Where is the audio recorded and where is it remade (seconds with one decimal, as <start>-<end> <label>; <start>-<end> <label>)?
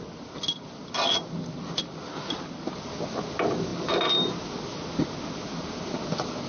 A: 0.0-6.5 recorded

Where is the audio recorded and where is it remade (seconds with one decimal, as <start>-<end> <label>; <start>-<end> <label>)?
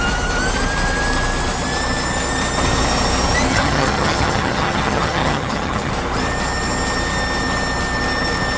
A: 0.0-3.5 recorded; 3.5-5.9 remade; 5.9-8.6 recorded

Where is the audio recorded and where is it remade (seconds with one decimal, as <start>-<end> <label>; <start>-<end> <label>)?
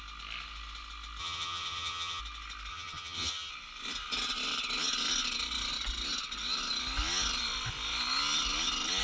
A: 0.0-1.2 recorded; 1.2-2.2 remade; 2.2-2.7 recorded; 2.7-3.5 remade; 3.5-9.0 recorded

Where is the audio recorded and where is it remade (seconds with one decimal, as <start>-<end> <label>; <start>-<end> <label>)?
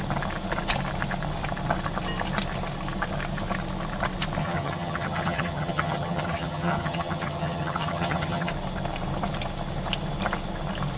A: 0.0-4.4 recorded; 4.4-8.5 remade; 8.5-11.0 recorded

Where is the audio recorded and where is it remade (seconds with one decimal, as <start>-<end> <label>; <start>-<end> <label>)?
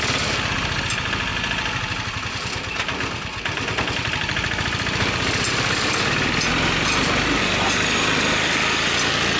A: 0.0-9.4 recorded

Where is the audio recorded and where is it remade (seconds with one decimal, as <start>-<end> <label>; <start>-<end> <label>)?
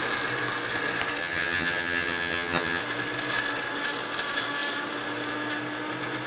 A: 0.0-1.2 recorded; 1.2-2.8 remade; 2.8-6.3 recorded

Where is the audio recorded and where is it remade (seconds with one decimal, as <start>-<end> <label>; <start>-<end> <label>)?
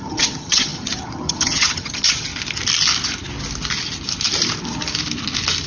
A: 0.0-2.3 remade; 2.3-5.7 recorded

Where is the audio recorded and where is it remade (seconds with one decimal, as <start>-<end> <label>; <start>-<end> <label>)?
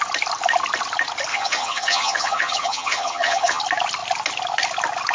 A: 0.0-1.3 recorded; 1.3-3.6 remade; 3.6-5.1 recorded